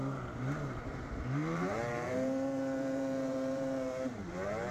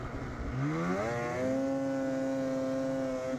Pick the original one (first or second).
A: second